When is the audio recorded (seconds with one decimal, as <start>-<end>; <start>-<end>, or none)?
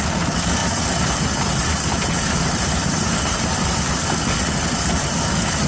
0.0-0.6; 4.0-5.7